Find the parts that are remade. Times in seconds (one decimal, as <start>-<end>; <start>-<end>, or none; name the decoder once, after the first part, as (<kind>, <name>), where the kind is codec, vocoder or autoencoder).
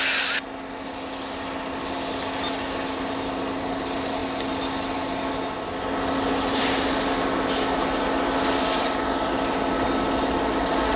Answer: none